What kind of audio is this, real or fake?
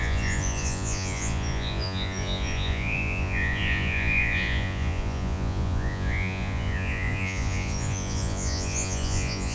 fake